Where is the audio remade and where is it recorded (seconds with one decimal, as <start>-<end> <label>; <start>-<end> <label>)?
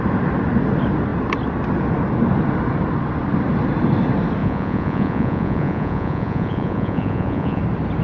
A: 0.0-4.4 recorded; 4.4-7.6 remade; 7.6-8.0 recorded